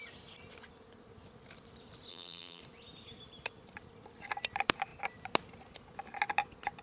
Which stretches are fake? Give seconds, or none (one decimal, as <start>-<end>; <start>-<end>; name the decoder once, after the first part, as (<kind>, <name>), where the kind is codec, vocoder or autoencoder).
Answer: 2.1-2.6 (vocoder, BigVGAN v2)